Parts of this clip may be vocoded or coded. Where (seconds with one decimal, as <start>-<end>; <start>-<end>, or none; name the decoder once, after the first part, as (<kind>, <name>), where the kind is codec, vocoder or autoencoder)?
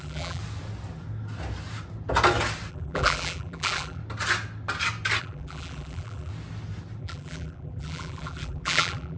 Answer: 0.0-0.4 (vocoder, BigVGAN v2); 2.7-4.0; 5.2-6.3; 7.0-9.2